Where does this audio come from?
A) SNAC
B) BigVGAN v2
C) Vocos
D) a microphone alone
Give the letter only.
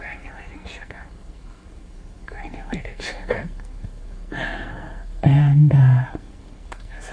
A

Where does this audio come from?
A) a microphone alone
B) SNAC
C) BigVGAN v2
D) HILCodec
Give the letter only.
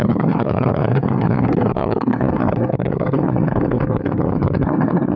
B